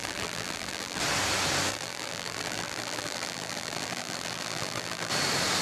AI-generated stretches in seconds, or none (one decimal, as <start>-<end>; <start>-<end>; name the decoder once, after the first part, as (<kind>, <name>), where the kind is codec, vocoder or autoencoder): 0.0-1.0 (vocoder, BigVGAN v2); 1.7-5.1